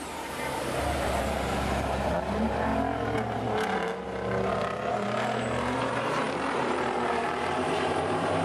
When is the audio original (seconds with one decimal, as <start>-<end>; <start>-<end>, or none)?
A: 2.7-4.5